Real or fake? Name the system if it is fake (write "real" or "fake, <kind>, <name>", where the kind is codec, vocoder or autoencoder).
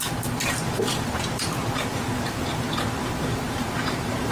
fake, vocoder, BigVGAN v2